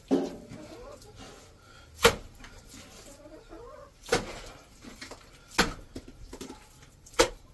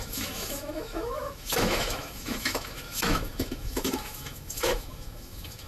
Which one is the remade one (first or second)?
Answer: second